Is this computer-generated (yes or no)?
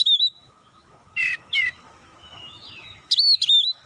yes